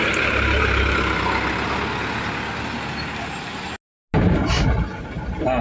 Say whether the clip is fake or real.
real